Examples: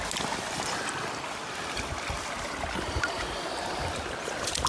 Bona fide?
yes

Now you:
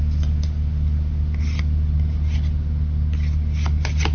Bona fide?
yes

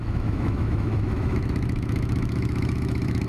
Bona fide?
no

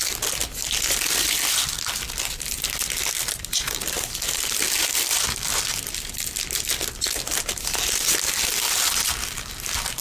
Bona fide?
yes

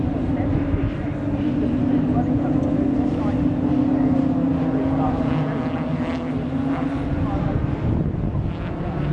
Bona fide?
yes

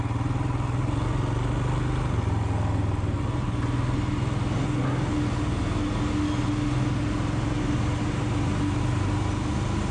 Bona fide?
yes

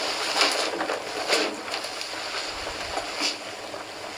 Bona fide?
yes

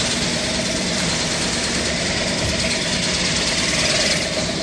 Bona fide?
yes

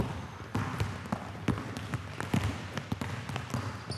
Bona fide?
yes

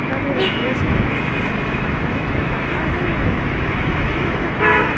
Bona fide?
no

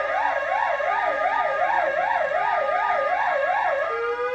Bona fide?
yes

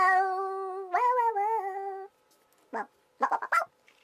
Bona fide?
yes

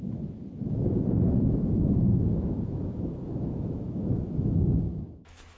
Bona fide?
no